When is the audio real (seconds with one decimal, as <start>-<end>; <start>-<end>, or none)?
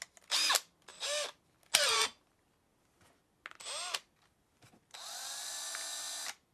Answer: 0.0-6.5